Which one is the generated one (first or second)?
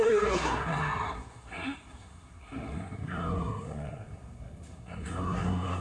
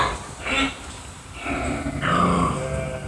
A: first